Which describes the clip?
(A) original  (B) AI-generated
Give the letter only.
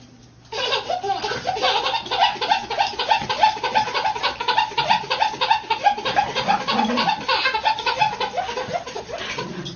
A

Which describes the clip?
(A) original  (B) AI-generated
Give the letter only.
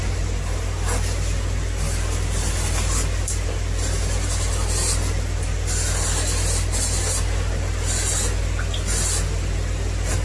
A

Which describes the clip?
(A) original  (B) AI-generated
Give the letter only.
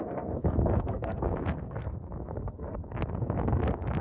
B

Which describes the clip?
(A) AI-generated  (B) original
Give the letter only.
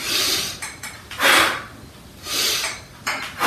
B